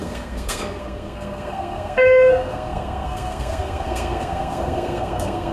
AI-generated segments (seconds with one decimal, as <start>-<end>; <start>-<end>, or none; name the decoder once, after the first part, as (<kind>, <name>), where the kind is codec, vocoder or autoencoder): 0.0-5.5 (codec, SNAC)

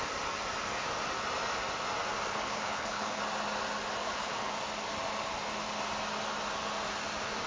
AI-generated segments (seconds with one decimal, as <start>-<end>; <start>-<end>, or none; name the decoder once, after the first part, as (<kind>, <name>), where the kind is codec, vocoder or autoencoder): 2.3-3.2 (codec, HILCodec); 4.0-4.5

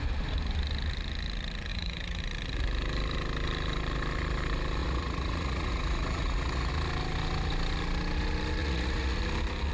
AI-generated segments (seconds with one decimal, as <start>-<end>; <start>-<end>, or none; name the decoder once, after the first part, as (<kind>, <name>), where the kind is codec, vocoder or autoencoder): 1.7-2.2 (vocoder, Vocos); 4.8-6.7; 8.6-9.2

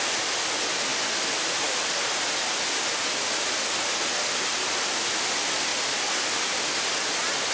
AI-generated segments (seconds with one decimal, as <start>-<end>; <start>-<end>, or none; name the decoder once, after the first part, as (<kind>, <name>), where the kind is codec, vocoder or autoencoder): none

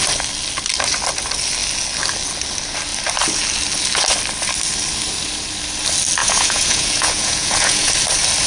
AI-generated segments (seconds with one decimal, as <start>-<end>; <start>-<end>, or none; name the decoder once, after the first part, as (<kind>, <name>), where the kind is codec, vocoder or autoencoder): 6.2-7.9 (vocoder, Vocos)

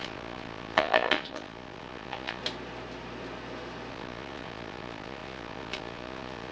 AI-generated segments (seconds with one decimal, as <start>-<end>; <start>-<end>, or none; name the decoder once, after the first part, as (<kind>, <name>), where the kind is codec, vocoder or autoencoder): 0.0-2.4 (vocoder, Vocos); 3.9-6.5